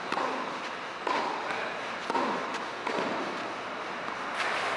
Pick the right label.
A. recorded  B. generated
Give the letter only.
A